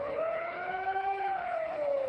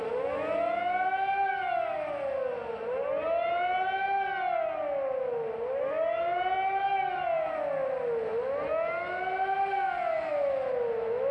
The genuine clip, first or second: second